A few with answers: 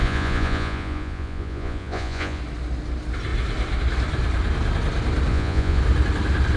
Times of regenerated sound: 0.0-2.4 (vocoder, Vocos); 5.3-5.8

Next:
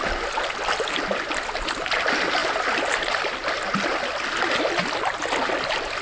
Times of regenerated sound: none

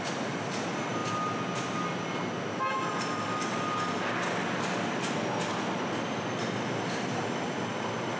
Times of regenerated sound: none

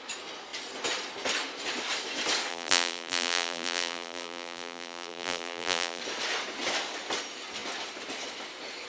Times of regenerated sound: 2.5-6.0 (vocoder, BigVGAN v2)

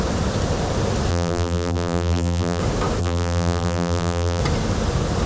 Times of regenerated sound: 1.1-2.6 (vocoder, BigVGAN v2); 3.0-4.4

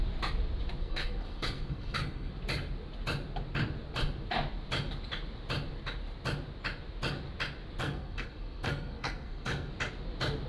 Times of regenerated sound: 0.8-2.3 (codec, SNAC); 7.8-9.7